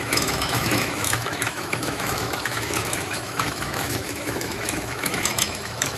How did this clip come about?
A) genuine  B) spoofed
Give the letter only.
B